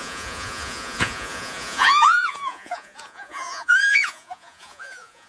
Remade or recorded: remade